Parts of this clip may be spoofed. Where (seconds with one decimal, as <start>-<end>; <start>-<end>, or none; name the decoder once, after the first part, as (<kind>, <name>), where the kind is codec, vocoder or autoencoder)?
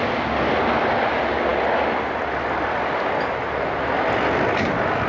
none